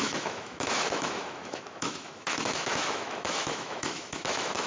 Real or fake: fake